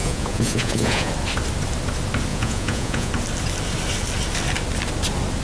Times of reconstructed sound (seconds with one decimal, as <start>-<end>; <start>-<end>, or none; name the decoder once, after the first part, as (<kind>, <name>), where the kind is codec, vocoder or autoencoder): 0.0-1.1 (vocoder, Vocos); 2.3-3.1